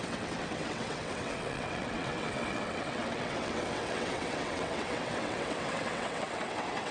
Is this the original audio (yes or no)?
no